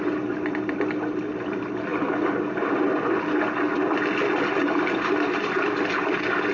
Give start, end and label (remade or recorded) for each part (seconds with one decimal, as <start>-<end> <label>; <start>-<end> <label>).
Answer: 0.0-6.5 recorded